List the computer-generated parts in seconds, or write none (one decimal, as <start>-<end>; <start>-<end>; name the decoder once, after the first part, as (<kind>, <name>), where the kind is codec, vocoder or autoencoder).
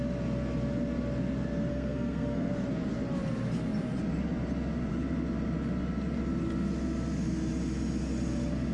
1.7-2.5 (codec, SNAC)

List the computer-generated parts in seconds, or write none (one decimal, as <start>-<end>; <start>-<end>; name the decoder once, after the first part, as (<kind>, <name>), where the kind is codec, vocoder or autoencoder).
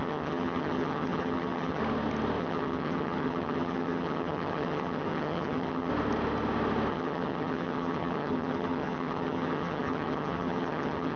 0.0-1.8 (vocoder, HiFi-GAN); 2.4-5.9; 6.9-11.2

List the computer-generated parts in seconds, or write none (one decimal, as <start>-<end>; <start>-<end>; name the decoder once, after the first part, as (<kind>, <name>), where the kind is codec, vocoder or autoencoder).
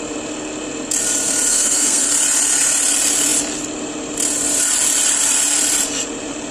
1.5-2.0 (codec, SNAC)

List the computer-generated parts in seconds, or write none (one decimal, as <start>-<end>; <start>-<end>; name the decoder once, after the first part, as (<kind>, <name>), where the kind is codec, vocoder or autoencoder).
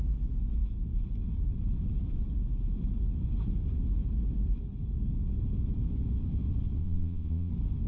6.8-7.5 (vocoder, Vocos)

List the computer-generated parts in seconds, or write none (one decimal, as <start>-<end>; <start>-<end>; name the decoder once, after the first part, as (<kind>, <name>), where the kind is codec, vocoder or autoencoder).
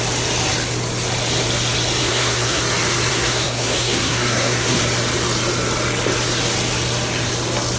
2.0-2.6 (codec, SNAC); 3.1-4.8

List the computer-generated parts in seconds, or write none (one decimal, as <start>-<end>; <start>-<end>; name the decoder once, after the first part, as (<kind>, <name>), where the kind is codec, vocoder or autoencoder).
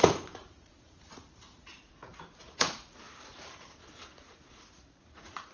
0.0-5.5 (vocoder, Vocos)